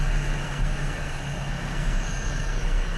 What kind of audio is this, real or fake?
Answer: fake